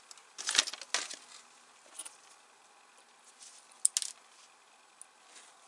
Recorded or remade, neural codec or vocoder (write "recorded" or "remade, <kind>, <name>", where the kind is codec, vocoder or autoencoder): recorded